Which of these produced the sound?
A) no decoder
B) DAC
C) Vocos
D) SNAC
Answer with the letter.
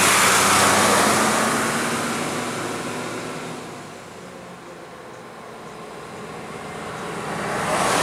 A